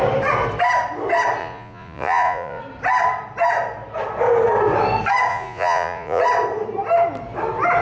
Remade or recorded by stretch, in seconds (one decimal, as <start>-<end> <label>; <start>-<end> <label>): 0.0-1.4 recorded; 1.4-2.6 remade; 2.6-5.3 recorded; 5.3-6.2 remade; 6.2-7.8 recorded